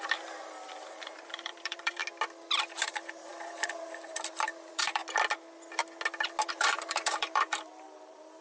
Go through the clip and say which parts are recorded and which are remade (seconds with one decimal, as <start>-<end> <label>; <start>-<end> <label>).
0.0-2.0 remade; 2.0-2.8 recorded; 2.8-5.0 remade; 5.0-6.5 recorded; 6.5-8.4 remade